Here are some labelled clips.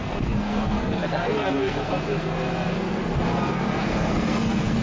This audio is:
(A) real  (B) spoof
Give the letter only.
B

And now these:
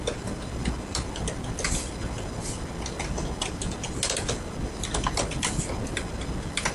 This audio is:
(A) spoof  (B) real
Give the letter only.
B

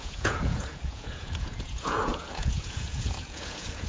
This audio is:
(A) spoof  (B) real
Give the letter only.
A